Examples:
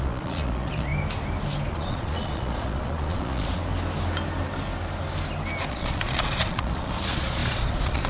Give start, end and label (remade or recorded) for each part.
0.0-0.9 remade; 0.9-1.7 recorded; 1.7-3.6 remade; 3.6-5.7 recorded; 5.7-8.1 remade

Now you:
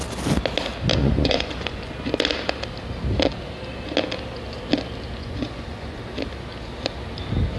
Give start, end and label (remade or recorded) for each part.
0.0-1.0 recorded; 1.0-1.9 remade; 1.9-5.2 recorded; 5.2-6.0 remade; 6.0-7.6 recorded

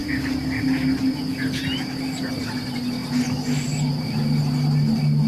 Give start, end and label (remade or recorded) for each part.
0.0-5.3 recorded

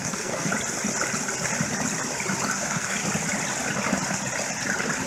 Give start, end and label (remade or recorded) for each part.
0.0-0.5 remade; 0.5-2.5 recorded; 2.5-3.0 remade; 3.0-5.1 recorded

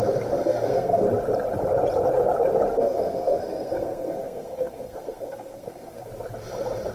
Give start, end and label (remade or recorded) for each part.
0.0-0.4 recorded; 0.4-1.0 remade; 1.0-2.7 recorded; 2.7-6.1 remade; 6.1-6.9 recorded

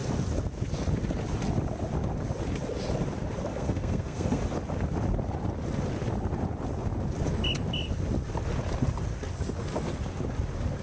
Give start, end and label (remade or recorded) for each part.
0.0-3.5 recorded; 3.5-4.4 remade; 4.4-10.8 recorded

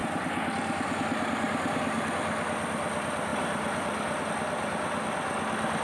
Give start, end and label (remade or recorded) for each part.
0.0-3.3 recorded; 3.3-4.3 remade; 4.3-5.8 recorded

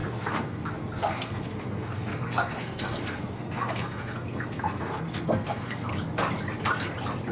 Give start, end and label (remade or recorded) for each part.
0.0-5.9 remade; 5.9-7.3 recorded